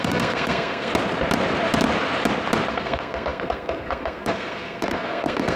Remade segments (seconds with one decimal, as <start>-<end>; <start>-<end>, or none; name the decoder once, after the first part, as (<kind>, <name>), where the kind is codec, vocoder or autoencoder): 0.0-0.9 (codec, SNAC); 2.7-5.6